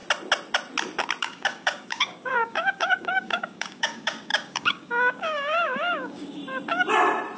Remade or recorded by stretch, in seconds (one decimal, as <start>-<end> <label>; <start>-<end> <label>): 0.0-1.2 recorded; 1.2-6.4 remade; 6.4-7.4 recorded